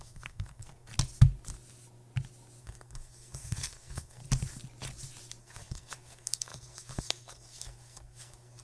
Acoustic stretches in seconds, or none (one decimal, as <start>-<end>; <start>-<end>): 0.9-2.6; 4.2-5.4